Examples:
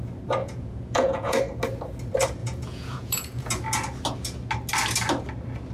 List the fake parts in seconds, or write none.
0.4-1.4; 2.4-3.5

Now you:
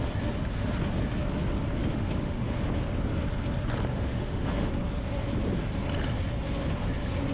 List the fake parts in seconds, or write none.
1.9-2.6; 3.9-4.7

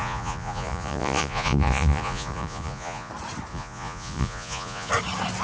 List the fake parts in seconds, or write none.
0.0-3.1; 3.5-4.9